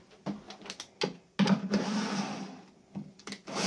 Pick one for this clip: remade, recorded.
recorded